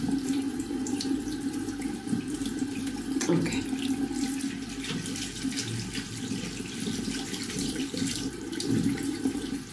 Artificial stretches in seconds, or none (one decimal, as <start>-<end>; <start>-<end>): 0.0-2.8; 7.5-9.7